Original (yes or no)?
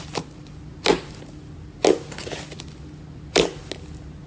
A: yes